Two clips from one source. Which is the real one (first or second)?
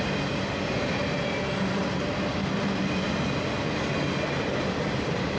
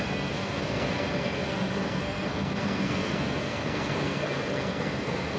first